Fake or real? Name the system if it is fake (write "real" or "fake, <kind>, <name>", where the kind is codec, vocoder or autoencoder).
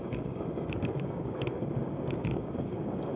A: fake, codec, DAC